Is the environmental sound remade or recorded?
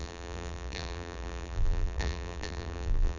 remade